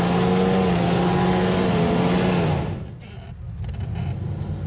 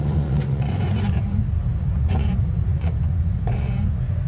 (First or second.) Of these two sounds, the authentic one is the first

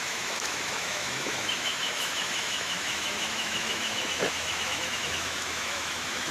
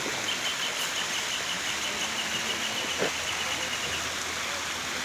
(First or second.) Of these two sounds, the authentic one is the second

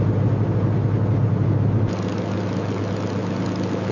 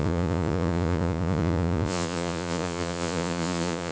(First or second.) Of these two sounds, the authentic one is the first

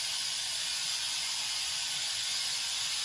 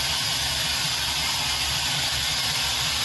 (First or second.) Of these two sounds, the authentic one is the second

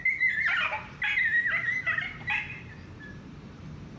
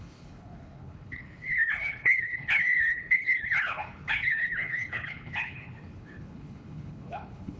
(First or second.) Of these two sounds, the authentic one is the first